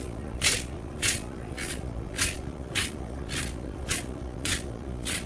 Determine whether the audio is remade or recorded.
remade